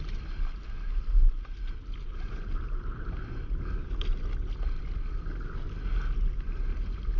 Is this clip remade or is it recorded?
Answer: recorded